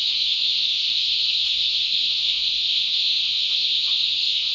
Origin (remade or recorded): remade